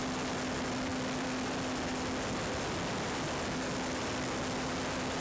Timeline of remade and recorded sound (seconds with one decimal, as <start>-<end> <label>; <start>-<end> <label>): 0.0-5.2 recorded